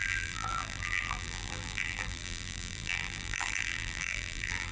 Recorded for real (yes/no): no